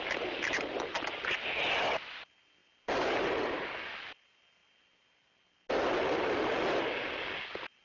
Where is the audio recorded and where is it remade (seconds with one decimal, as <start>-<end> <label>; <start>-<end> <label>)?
0.0-7.8 recorded